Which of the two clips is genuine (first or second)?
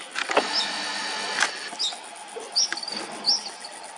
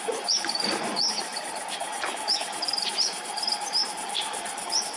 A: first